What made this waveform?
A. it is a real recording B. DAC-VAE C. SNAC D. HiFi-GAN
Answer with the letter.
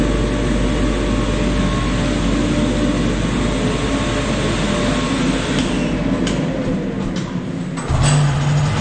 A